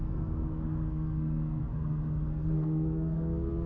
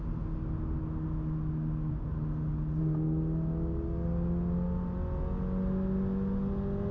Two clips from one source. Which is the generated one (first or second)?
first